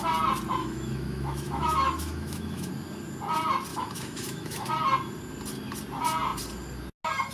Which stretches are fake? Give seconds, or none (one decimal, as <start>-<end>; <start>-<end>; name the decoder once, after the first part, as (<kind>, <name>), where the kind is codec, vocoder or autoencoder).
0.6-2.7 (autoencoder, DAC-VAE); 3.7-4.7

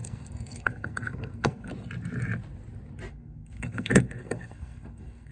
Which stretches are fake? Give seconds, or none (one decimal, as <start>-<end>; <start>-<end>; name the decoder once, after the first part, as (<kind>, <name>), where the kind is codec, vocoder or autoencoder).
0.0-1.7 (codec, SNAC); 3.1-5.3

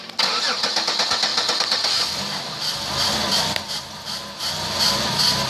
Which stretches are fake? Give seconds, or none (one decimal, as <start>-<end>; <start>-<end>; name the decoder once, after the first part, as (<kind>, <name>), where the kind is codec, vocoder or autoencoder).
none

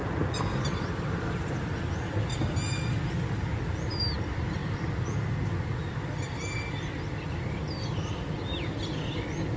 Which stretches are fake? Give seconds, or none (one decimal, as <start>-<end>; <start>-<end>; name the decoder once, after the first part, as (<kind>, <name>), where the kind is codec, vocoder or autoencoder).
none

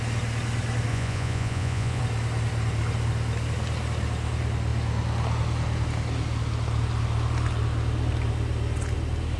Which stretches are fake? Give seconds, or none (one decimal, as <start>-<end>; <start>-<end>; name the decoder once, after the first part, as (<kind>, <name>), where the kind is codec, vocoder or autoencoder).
0.9-2.0 (vocoder, Vocos)

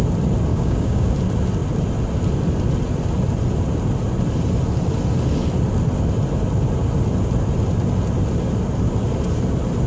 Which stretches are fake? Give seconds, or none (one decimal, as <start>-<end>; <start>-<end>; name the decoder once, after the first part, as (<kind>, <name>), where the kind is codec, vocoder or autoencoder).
0.5-1.1 (codec, DAC)